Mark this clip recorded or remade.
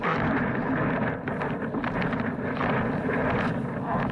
recorded